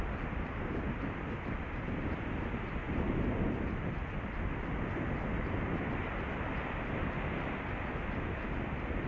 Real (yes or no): yes